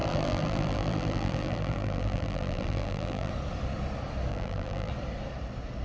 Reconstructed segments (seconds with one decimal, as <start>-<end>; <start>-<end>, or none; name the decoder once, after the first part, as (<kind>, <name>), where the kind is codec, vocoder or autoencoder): 0.0-3.3 (vocoder, BigVGAN v2); 4.3-4.9